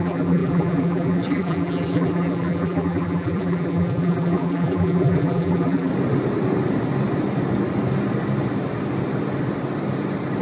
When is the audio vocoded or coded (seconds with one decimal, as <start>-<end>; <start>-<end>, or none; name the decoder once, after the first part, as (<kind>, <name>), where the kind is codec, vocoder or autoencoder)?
0.0-5.9 (vocoder, BigVGAN v2)